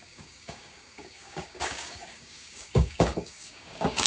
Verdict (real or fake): fake